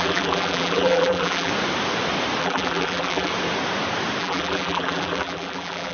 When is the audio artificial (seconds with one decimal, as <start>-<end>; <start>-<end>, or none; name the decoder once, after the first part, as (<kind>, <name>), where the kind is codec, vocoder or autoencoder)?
0.0-1.5 (vocoder, BigVGAN v2); 2.4-3.3; 4.2-5.9